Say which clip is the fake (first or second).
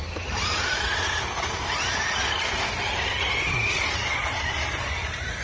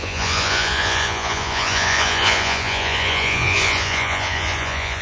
second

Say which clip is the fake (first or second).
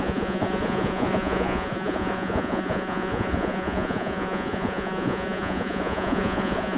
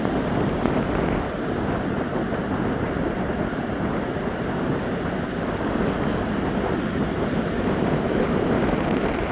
first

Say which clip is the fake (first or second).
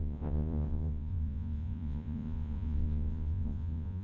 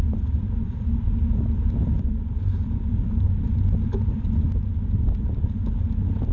first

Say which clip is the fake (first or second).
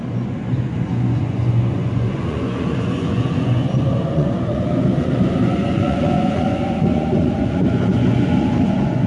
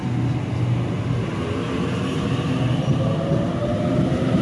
first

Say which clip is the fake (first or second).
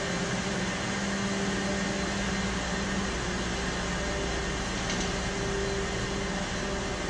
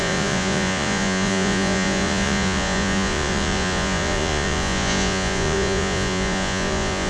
second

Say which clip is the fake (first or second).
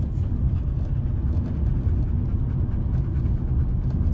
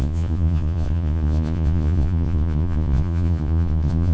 second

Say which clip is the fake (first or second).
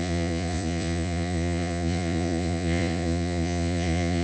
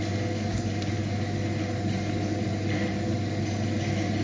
first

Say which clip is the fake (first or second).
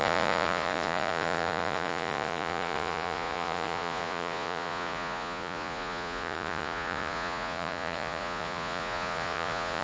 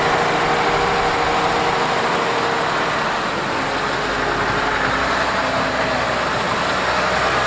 first